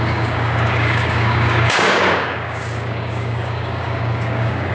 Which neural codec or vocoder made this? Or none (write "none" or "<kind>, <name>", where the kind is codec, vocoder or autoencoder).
codec, DAC